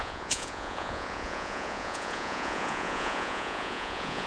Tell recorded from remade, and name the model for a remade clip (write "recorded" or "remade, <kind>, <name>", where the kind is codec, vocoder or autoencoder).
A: remade, vocoder, Vocos